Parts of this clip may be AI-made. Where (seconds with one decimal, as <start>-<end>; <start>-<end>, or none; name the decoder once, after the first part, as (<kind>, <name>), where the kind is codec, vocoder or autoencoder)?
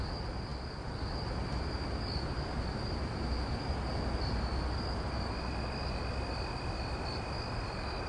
none